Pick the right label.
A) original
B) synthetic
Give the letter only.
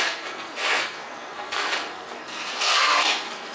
B